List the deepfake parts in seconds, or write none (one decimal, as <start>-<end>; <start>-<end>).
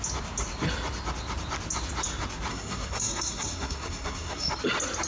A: 2.5-4.5